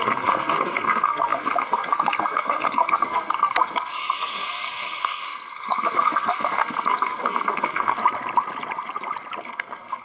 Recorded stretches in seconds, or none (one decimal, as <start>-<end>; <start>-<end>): 8.0-9.4